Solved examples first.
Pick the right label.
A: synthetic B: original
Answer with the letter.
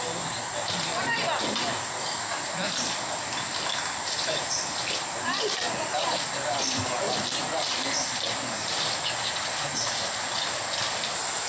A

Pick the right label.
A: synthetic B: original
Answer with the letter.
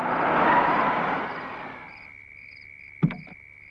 B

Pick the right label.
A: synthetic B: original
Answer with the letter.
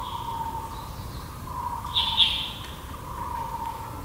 B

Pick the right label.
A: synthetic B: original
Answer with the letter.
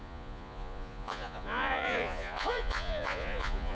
A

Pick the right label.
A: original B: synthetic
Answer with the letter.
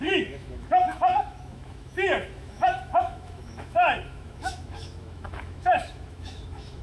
B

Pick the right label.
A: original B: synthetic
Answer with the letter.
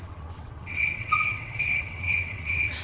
B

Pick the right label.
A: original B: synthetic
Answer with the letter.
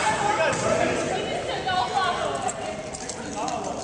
A